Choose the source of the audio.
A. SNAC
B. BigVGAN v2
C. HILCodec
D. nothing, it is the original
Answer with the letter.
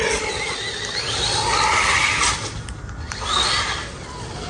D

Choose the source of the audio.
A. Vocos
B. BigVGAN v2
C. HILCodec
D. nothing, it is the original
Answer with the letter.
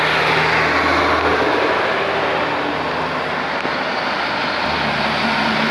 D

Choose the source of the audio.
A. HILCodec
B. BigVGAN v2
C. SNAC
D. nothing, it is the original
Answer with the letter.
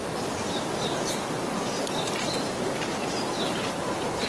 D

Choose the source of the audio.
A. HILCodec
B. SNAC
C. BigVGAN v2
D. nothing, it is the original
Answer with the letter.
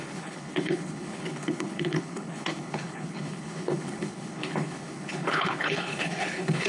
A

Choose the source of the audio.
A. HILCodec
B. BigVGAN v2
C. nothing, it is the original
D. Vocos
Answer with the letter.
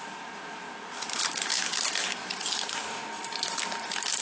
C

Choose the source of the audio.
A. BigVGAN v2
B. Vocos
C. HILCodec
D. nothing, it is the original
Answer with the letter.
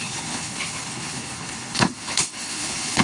C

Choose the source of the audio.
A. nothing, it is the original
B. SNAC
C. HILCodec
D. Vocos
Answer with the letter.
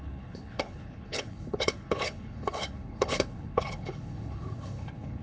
C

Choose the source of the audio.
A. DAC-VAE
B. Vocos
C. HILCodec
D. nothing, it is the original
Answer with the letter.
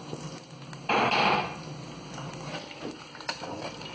D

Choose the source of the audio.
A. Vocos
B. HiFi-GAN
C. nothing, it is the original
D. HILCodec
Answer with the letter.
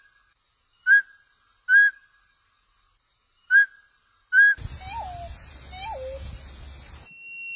C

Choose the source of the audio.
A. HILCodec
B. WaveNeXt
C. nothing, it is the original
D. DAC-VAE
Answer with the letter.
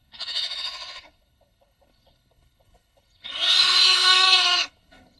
A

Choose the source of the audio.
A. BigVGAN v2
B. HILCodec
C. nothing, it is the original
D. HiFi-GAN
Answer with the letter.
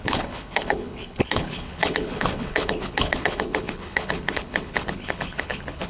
B